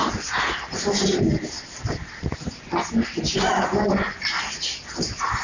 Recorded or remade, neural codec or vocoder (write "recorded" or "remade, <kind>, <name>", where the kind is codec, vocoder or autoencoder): recorded